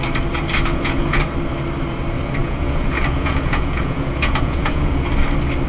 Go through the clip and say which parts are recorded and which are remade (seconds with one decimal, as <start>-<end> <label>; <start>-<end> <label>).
0.0-0.7 recorded; 0.7-1.2 remade; 1.2-2.4 recorded; 2.4-5.1 remade; 5.1-5.7 recorded